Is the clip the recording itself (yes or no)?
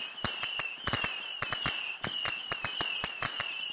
yes